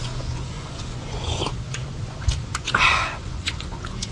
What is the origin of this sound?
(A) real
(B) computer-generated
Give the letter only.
B